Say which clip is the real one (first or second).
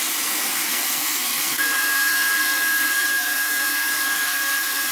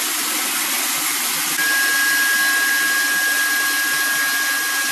second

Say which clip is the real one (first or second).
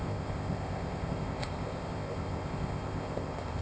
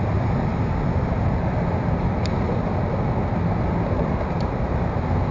second